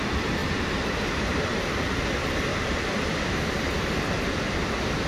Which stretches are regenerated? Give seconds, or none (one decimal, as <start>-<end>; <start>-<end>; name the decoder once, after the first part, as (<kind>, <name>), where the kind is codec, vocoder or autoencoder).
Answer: 0.4-1.6 (vocoder, BigVGAN v2)